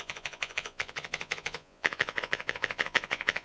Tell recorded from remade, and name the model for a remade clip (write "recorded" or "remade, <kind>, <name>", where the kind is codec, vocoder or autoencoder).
remade, vocoder, Vocos